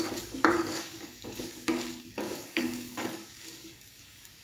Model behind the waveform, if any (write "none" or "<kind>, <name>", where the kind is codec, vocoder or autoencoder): codec, DAC